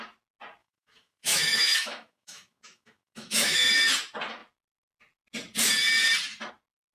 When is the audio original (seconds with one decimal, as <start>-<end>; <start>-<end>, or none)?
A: 0.0-0.6; 3.7-6.9